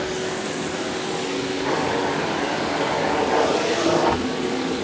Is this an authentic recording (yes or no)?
no